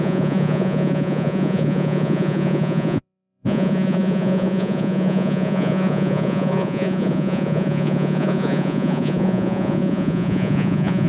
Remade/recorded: remade